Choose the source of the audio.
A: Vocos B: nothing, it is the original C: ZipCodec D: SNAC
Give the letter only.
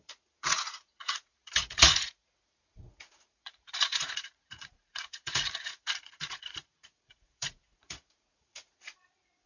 A